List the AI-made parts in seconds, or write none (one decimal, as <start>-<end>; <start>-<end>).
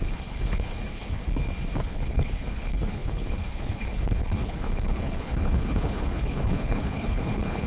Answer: 0.0-1.2; 1.8-7.7